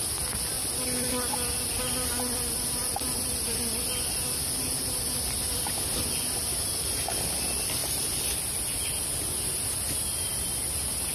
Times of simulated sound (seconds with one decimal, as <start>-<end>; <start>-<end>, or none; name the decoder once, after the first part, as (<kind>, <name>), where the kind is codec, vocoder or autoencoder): 2.8-3.5 (vocoder, BigVGAN v2); 7.8-8.4

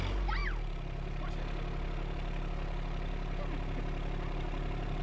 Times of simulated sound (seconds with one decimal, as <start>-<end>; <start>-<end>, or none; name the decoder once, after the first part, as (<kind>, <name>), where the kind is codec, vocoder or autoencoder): none